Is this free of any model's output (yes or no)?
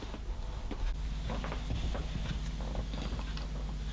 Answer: yes